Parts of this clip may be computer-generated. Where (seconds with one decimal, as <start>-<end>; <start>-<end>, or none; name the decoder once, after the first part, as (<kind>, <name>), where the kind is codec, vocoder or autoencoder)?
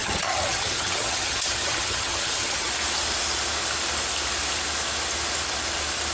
0.0-2.7 (vocoder, HiFi-GAN)